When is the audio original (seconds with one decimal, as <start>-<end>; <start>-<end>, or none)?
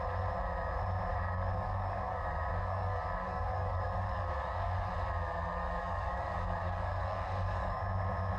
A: 0.0-1.1; 4.9-5.6; 7.8-8.4